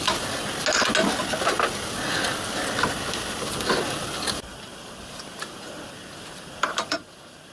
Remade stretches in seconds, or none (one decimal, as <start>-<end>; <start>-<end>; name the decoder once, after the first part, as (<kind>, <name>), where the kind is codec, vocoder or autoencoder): 4.5-7.5 (vocoder, BigVGAN v2)